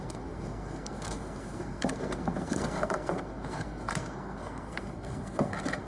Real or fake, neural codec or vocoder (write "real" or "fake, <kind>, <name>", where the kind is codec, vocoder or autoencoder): fake, codec, SNAC